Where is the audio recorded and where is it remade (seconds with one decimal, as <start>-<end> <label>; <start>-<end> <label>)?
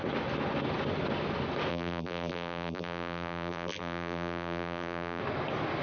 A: 0.0-1.7 recorded; 1.7-5.2 remade; 5.2-5.8 recorded